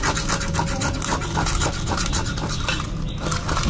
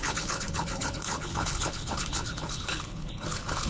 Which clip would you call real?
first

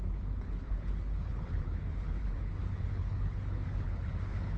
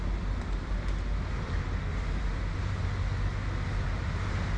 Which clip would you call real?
second